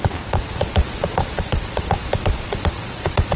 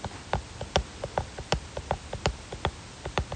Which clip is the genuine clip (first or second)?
second